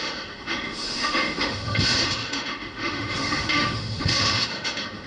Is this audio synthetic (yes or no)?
yes